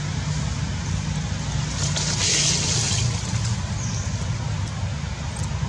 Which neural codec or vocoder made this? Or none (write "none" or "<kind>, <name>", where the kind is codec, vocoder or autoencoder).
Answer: none